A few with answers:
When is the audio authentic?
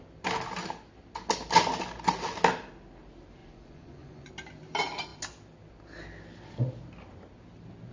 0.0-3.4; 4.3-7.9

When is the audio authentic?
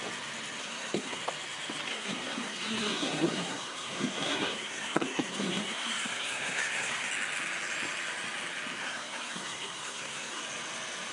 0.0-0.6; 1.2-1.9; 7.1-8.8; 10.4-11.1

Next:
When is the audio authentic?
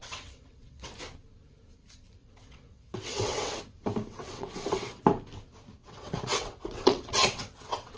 0.9-2.2; 3.6-4.1; 5.0-5.8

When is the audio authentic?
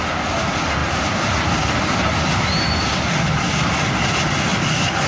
0.0-5.1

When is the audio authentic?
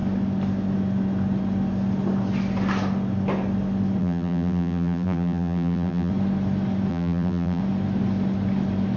0.0-4.0; 6.1-6.9; 7.6-9.0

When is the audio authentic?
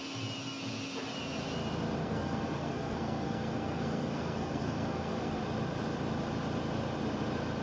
0.0-2.0; 5.4-7.6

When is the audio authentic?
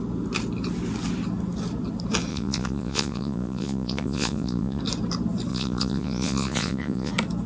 0.0-2.3; 4.8-5.5; 7.1-7.5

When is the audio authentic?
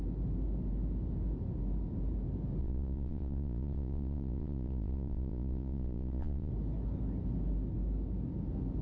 0.0-2.6; 6.5-8.8